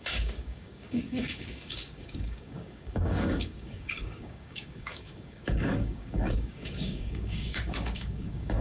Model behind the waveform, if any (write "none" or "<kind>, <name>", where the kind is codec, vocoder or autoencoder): codec, DAC